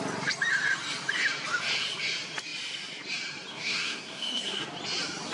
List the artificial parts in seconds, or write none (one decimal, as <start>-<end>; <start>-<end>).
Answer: 3.5-4.6